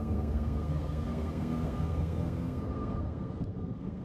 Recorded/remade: remade